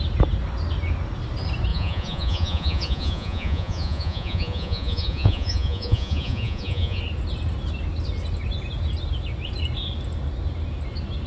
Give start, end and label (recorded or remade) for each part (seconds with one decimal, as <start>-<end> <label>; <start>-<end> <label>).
0.0-1.7 recorded; 1.7-7.0 remade; 7.0-11.3 recorded